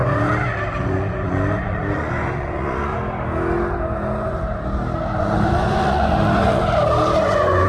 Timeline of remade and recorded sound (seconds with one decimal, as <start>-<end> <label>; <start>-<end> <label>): 0.0-0.8 recorded; 0.8-2.9 remade; 2.9-5.2 recorded; 5.2-6.6 remade; 6.6-7.2 recorded; 7.2-7.7 remade